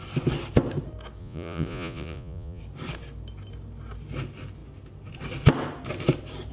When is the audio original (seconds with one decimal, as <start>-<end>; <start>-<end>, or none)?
0.0-1.2; 2.6-6.5

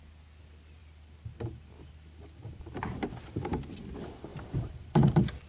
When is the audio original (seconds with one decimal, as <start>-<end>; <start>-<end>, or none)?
0.0-0.8; 3.5-4.3

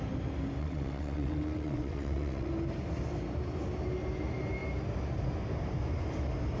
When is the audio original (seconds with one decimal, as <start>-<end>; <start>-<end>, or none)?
0.0-0.6; 2.5-6.6

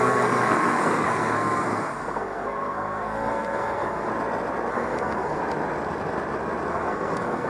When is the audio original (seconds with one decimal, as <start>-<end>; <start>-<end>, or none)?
4.1-4.7; 5.4-6.7

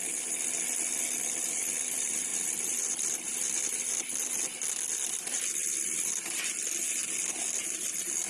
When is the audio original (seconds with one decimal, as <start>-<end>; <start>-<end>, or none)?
0.0-8.3

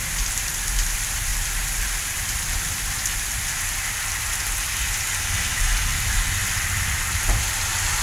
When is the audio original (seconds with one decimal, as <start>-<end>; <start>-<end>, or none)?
0.0-8.0